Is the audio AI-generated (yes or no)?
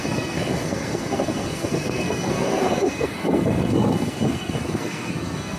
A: yes